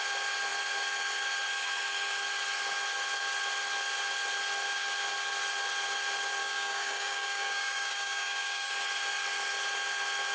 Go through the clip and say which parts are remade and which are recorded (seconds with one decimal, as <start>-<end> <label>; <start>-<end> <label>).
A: 0.0-6.4 recorded; 6.4-8.7 remade; 8.7-10.3 recorded